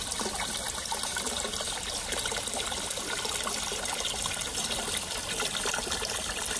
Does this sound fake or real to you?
real